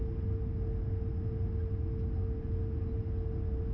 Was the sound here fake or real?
real